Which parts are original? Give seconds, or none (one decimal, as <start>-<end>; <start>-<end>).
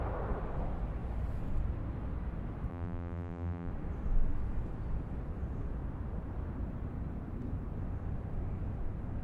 0.0-2.7; 3.7-9.2